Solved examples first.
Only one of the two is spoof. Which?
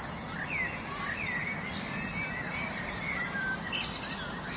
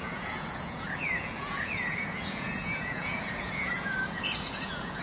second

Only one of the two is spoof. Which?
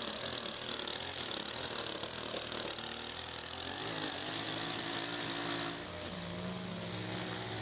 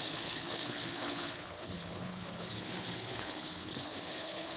second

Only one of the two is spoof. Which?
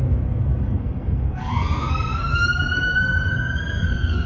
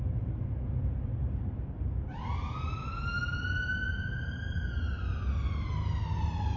first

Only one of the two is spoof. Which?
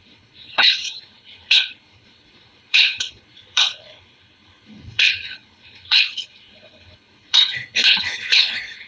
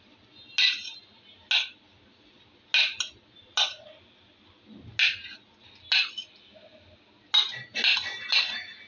first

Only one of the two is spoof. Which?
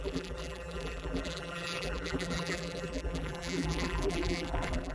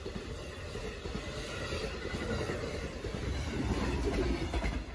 first